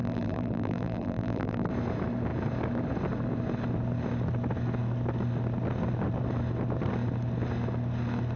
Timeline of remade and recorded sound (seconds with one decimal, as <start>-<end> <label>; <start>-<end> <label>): 0.0-1.7 remade; 1.7-8.4 recorded